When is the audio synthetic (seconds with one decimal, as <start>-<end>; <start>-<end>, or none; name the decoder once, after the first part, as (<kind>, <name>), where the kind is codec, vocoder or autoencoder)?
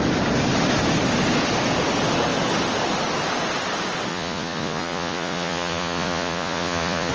4.1-7.1 (vocoder, Vocos)